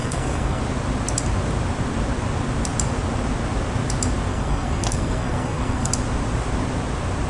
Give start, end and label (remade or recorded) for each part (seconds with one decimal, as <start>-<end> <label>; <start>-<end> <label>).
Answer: 0.0-0.6 remade; 0.6-4.3 recorded; 4.3-5.9 remade; 5.9-7.3 recorded